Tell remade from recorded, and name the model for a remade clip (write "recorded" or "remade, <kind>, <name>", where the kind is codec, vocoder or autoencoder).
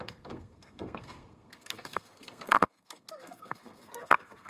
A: remade, codec, SNAC